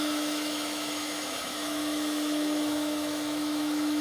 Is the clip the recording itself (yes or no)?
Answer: no